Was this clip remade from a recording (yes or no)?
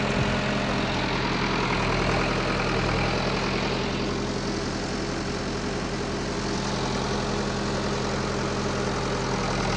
no